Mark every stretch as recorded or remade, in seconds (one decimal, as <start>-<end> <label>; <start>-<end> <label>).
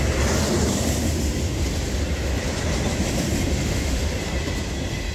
0.0-3.6 recorded; 3.6-4.1 remade; 4.1-5.1 recorded